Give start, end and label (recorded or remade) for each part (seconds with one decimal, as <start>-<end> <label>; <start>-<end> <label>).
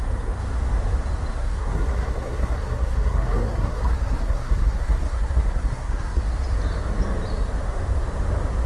0.0-1.4 recorded; 1.4-6.2 remade; 6.2-8.7 recorded